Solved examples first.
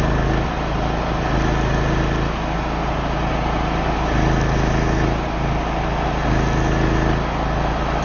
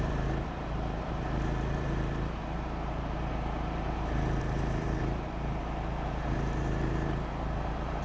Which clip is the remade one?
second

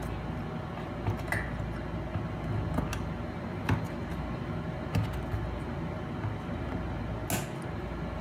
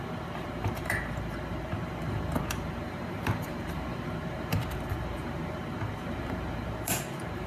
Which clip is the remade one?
second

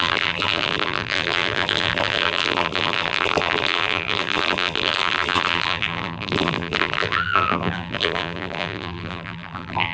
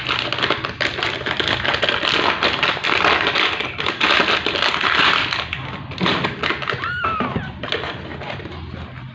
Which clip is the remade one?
first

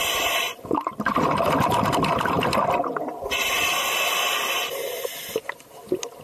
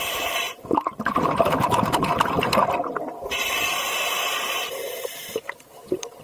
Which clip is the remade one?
second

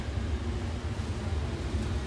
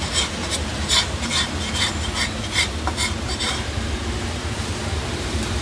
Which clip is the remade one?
second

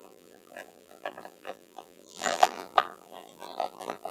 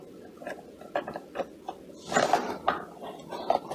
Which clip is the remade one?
first